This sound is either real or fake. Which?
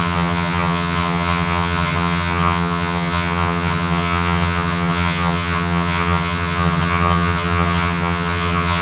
fake